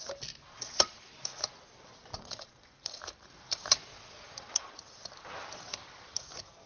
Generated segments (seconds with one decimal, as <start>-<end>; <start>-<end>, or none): 0.5-1.1; 2.1-2.7; 3.9-4.7